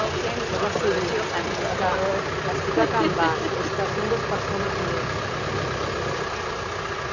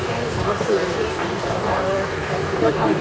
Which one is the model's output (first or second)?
second